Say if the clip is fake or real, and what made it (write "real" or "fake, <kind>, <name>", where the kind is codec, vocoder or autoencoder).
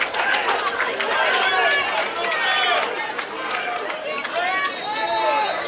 real